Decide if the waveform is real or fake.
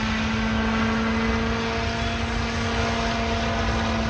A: real